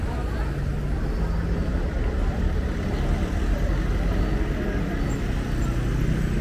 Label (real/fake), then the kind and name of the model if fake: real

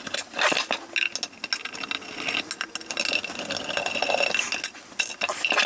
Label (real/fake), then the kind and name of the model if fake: real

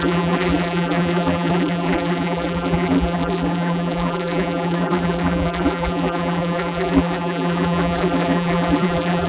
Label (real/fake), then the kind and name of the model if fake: fake, vocoder, BigVGAN v2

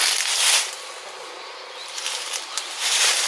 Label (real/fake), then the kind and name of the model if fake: real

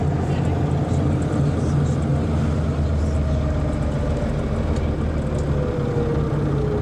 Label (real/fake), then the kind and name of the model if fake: real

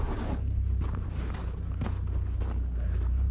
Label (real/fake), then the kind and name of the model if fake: real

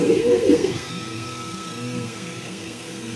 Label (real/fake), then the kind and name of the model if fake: fake, codec, SNAC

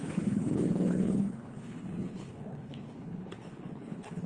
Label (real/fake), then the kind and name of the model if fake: fake, codec, HILCodec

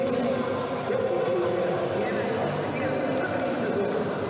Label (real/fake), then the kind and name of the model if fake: real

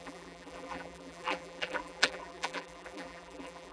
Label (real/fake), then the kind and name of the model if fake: fake, vocoder, BigVGAN v2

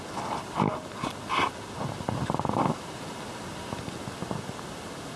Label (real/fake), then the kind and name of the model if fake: real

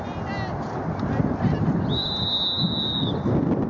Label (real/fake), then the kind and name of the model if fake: real